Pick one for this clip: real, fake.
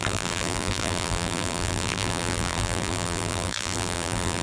fake